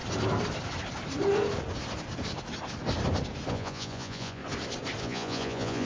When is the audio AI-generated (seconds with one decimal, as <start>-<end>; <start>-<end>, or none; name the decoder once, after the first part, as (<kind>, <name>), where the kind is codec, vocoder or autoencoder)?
3.5-4.4 (vocoder, Vocos); 5.0-5.9